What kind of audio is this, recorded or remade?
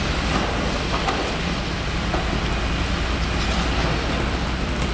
recorded